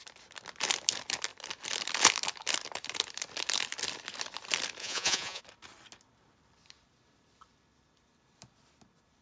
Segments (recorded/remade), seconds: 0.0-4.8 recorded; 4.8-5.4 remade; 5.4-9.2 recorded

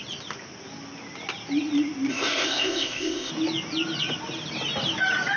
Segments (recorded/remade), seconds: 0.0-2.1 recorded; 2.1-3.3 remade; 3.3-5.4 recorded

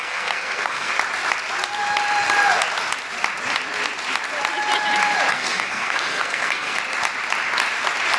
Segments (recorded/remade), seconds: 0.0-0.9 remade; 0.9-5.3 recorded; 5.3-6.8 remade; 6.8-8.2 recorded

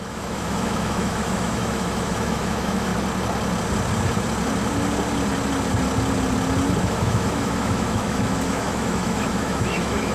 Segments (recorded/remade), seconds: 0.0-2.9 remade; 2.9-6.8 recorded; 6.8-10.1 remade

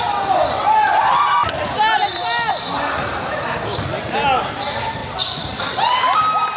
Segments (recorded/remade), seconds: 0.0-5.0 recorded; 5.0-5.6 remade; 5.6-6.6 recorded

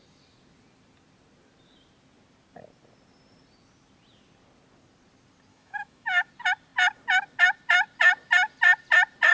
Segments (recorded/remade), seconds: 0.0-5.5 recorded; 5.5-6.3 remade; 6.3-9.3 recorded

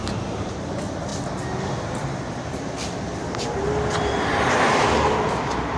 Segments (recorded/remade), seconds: 0.0-0.7 remade; 0.7-5.8 recorded